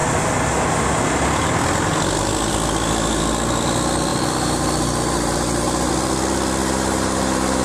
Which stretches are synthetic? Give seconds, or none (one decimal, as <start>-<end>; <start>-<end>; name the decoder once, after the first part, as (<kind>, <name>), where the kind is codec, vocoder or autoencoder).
4.1-5.9 (vocoder, BigVGAN v2); 6.6-7.6